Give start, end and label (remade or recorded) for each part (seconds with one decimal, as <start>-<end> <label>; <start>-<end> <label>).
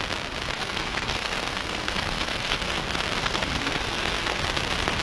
0.0-0.6 recorded; 0.6-2.8 remade; 2.8-3.2 recorded; 3.2-4.4 remade; 4.4-5.0 recorded